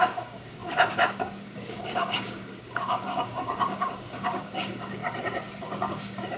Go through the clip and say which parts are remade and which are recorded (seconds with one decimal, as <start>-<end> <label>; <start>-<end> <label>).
0.0-5.0 remade; 5.0-5.6 recorded; 5.6-6.4 remade